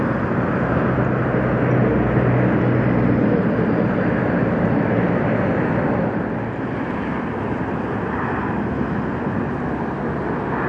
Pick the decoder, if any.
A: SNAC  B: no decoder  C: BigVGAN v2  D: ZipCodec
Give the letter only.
B